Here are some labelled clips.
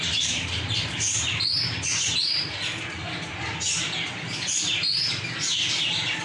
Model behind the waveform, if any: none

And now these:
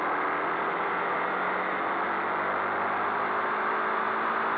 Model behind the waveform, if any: none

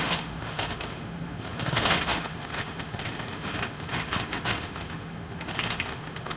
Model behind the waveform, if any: autoencoder, DAC-VAE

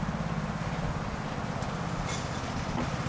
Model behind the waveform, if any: none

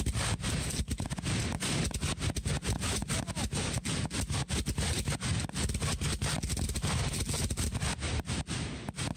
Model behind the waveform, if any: none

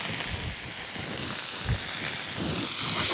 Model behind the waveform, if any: none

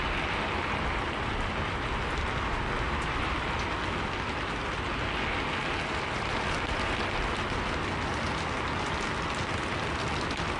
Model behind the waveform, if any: none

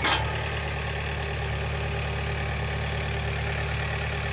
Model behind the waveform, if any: none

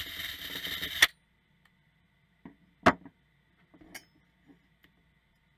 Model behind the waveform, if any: none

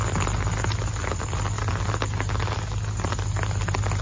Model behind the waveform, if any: none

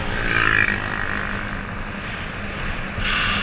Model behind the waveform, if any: none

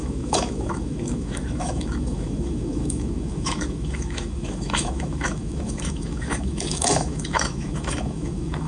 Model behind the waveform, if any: autoencoder, DAC-VAE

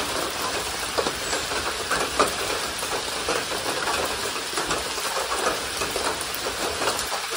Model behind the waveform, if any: none